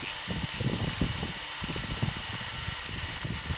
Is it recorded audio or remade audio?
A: recorded